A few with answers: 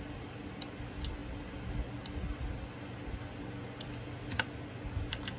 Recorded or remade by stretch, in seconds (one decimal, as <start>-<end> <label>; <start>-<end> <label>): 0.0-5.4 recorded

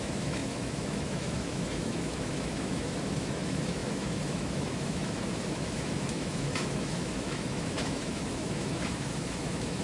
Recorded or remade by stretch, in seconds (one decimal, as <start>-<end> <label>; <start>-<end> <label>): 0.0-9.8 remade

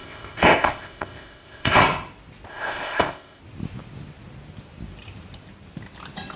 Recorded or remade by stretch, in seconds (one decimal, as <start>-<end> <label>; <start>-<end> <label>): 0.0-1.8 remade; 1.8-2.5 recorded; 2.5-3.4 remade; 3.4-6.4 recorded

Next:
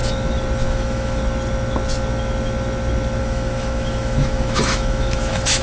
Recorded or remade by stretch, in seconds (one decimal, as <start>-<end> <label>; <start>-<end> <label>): 0.0-0.7 recorded; 0.7-1.2 remade; 1.2-3.2 recorded; 3.2-5.6 remade

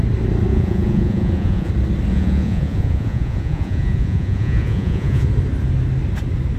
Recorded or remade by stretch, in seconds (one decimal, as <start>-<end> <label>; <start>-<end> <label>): 0.0-0.5 recorded; 0.5-1.7 remade; 1.7-2.1 recorded; 2.1-5.3 remade; 5.3-6.6 recorded